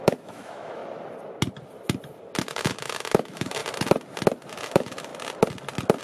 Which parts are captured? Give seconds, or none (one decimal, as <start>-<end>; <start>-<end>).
0.8-2.4; 3.6-4.5; 5.1-6.0